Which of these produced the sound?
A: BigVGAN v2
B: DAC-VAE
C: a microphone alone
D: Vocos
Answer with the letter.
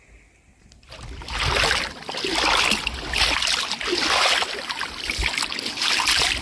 C